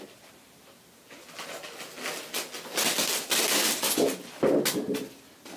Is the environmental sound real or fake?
real